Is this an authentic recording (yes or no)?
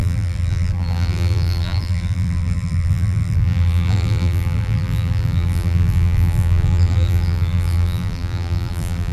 no